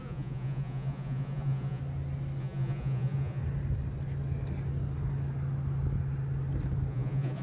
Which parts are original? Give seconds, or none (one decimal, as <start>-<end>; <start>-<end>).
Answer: 1.8-2.4; 3.4-6.9

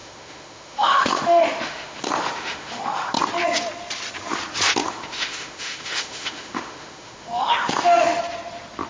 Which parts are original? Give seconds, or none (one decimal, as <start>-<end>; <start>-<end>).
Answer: 3.1-4.8; 8.2-8.9

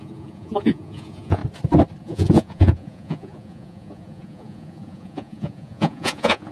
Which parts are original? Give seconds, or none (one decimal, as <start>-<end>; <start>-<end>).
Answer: 1.4-2.0

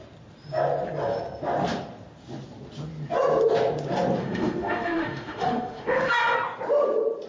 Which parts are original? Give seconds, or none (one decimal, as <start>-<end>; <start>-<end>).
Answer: 0.0-4.2; 6.1-7.3

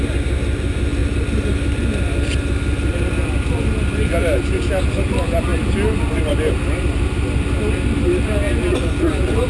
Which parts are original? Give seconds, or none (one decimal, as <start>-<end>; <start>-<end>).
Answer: 0.0-9.5

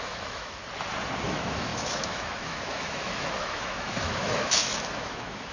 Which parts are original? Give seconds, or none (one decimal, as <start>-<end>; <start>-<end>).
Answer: 0.6-1.2

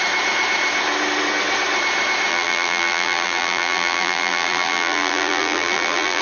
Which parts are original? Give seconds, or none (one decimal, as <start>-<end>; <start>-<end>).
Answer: 0.0-2.3